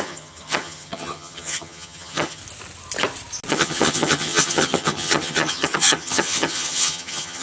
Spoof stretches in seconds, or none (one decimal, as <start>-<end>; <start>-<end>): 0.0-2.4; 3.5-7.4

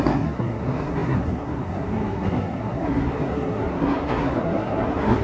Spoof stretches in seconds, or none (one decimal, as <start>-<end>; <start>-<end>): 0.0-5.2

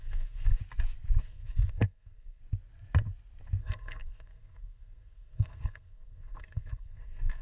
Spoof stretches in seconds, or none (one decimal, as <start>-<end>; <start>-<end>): 0.0-0.6; 1.2-2.4; 3.6-7.4

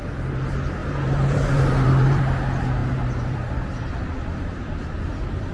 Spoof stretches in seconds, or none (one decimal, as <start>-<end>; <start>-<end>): 0.8-2.2; 2.8-3.5; 4.2-5.5

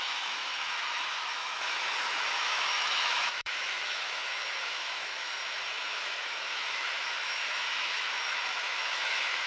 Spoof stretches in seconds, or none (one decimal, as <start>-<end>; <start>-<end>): 0.0-9.5

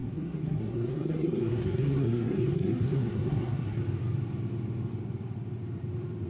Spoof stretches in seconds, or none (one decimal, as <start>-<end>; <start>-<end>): 0.0-3.8

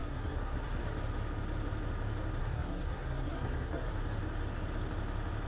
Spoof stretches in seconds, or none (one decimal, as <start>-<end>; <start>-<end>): 0.0-0.8; 2.4-3.9